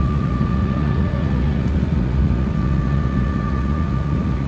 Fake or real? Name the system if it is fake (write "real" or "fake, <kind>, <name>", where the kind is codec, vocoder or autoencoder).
fake, vocoder, Vocos